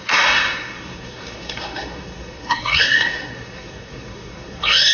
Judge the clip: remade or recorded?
remade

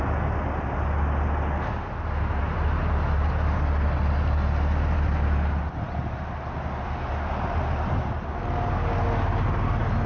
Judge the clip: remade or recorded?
recorded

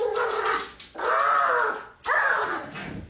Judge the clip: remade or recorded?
recorded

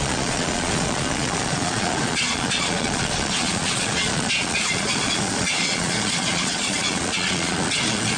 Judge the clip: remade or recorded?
remade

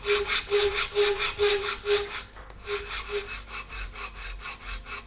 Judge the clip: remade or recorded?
recorded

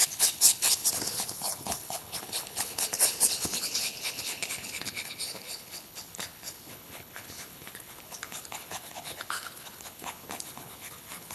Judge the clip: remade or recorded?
remade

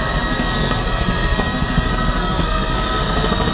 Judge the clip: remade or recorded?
remade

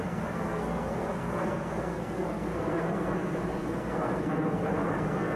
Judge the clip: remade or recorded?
remade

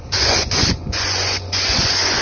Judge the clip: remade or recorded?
remade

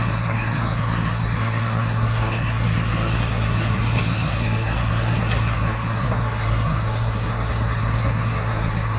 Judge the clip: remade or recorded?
remade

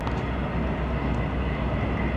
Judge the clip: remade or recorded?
recorded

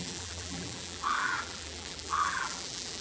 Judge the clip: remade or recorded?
remade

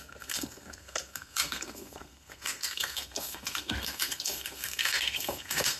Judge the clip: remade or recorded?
remade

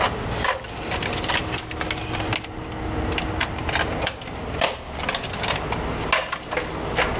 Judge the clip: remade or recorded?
recorded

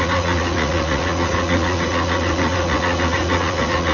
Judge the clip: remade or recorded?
remade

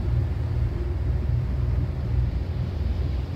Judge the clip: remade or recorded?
remade